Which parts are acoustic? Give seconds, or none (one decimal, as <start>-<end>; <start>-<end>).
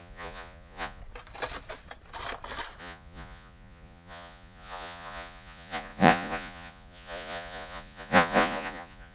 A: 1.0-2.8